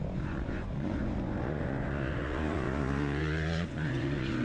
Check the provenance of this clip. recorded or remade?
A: remade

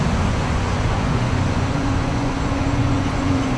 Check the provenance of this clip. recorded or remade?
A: remade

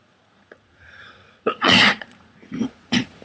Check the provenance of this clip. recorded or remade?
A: remade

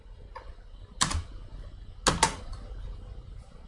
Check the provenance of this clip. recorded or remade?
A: recorded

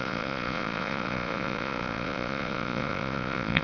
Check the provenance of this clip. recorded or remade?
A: remade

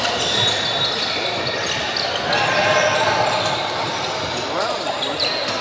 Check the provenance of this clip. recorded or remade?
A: recorded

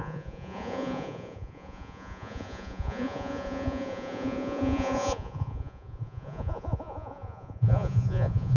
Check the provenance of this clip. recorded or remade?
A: remade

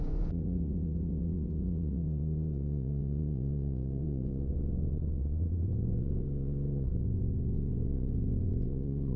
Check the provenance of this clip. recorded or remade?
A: remade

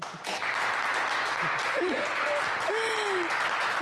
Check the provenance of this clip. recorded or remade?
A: recorded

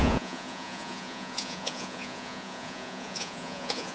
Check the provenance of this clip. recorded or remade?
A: remade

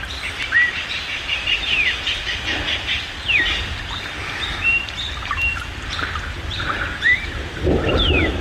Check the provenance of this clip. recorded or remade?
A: recorded